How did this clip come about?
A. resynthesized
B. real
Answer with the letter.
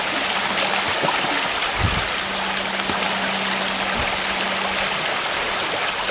B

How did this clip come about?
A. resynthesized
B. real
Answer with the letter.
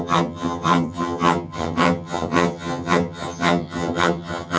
A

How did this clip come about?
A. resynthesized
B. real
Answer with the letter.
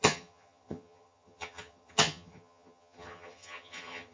A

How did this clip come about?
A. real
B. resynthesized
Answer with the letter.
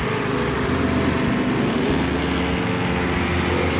A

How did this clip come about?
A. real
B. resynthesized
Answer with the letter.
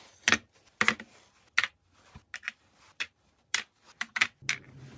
A